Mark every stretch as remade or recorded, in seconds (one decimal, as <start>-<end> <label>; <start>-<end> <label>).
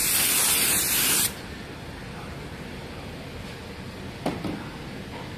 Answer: 0.0-5.4 recorded